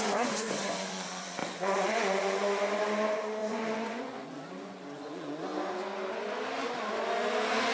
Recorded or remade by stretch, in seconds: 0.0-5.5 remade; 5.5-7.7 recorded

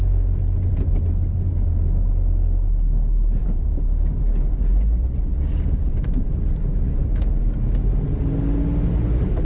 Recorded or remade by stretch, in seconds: 0.0-3.4 recorded; 3.4-4.2 remade; 4.2-9.4 recorded

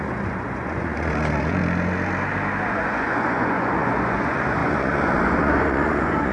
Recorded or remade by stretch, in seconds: 0.0-1.6 remade; 1.6-2.7 recorded; 2.7-6.3 remade

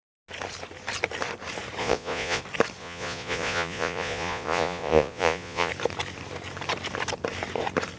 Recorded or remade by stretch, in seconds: 0.0-1.8 recorded; 1.8-2.4 remade; 2.4-2.8 recorded; 2.8-5.7 remade; 5.7-8.0 recorded